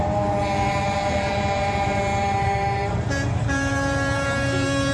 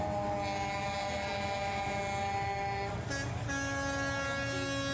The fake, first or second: first